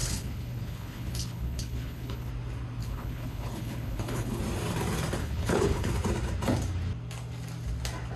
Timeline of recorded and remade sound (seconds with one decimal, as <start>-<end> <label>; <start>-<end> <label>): 0.0-2.3 remade; 2.3-2.8 recorded; 2.8-4.4 remade; 4.4-5.2 recorded; 5.2-5.9 remade; 5.9-8.2 recorded